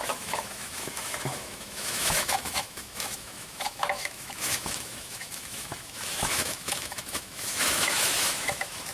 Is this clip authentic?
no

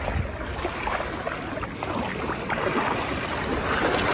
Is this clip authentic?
yes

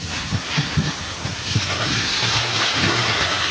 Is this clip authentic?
no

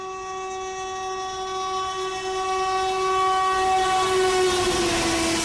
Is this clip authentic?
yes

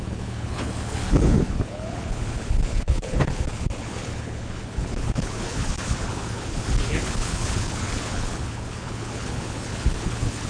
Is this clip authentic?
no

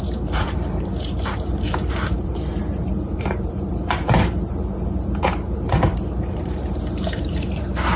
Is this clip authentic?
no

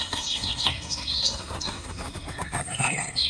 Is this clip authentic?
no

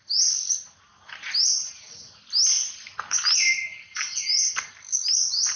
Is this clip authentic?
yes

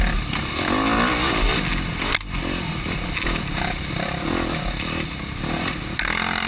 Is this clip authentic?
yes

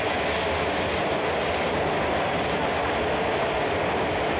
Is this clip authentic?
yes